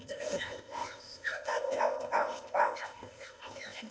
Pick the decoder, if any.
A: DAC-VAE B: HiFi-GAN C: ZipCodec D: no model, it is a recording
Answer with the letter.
C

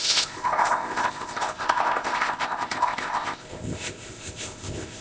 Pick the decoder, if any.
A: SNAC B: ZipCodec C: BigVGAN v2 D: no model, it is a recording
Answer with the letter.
B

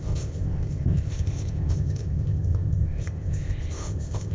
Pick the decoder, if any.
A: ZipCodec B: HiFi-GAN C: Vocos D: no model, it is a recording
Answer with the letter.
A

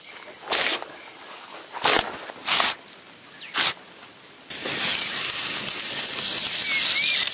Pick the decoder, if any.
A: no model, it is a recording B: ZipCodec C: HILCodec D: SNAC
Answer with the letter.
A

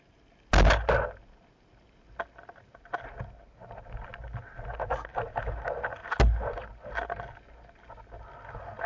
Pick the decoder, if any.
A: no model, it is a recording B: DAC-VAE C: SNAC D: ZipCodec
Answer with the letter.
A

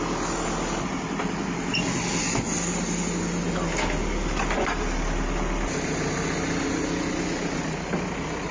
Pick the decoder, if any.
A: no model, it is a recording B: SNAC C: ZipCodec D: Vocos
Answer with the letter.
A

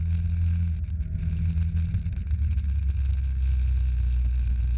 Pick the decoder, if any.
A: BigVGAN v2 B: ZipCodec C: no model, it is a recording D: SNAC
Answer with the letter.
C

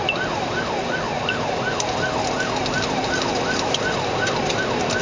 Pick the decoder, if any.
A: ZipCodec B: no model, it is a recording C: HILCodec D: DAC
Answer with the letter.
B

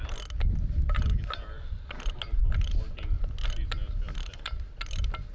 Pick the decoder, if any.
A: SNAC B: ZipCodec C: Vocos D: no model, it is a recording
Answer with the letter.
D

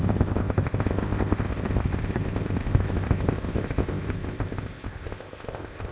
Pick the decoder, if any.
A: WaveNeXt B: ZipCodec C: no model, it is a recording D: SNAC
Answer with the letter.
B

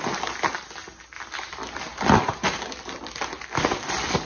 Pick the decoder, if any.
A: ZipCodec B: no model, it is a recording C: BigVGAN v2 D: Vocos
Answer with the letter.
B